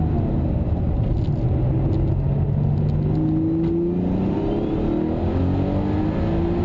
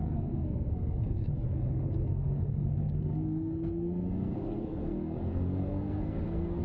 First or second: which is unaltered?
first